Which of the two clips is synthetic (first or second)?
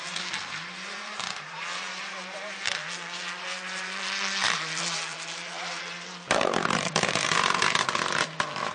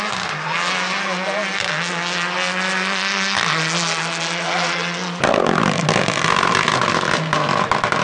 first